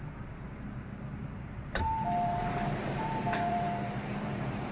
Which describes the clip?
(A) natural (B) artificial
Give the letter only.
B